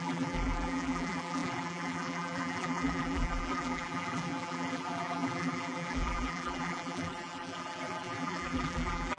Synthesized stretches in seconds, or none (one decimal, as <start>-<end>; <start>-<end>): 0.0-9.2